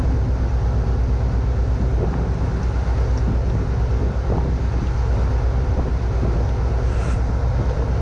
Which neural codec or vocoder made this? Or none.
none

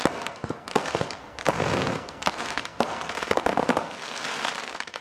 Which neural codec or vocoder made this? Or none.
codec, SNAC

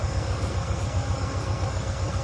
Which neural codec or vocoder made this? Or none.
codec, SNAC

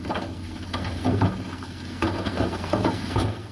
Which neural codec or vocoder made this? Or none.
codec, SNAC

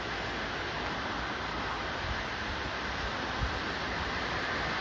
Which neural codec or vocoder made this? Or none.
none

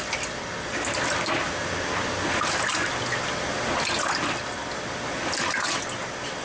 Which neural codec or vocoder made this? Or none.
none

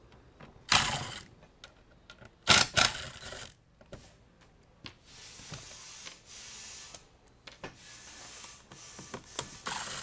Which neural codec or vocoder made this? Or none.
none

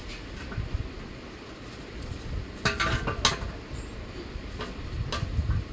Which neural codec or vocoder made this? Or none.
none